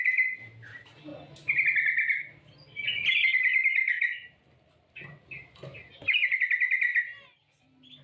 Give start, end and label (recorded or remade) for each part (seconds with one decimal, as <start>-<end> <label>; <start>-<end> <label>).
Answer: 0.0-8.0 recorded